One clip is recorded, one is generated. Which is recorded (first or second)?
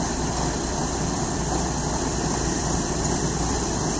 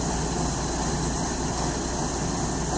second